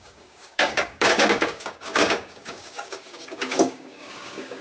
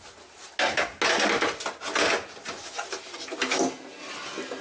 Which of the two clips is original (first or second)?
second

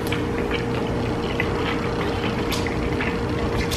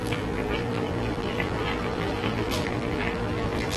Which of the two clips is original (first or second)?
first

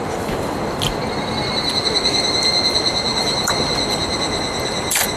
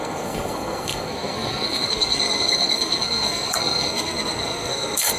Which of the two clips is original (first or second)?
first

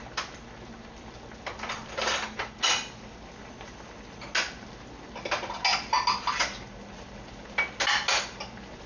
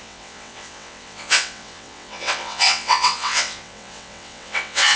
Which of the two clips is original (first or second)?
first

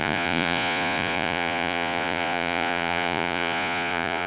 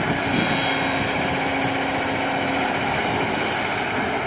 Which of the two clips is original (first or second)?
second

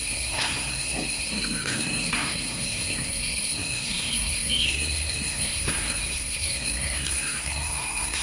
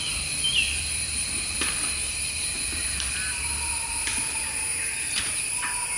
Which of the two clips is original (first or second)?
second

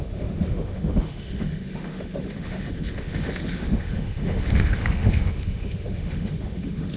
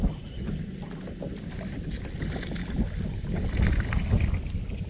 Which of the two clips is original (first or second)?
second